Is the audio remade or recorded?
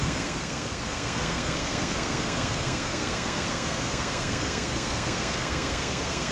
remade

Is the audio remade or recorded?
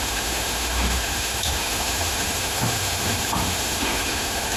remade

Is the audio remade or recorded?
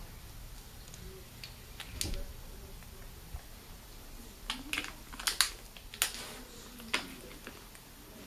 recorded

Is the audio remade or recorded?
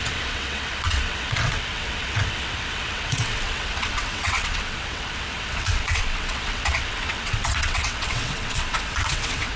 remade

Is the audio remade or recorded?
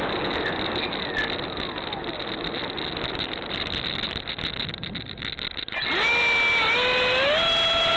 recorded